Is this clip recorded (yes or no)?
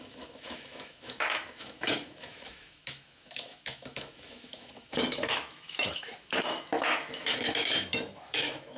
no